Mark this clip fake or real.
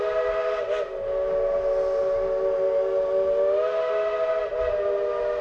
real